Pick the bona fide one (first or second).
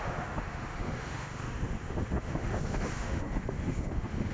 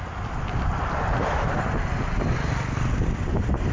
second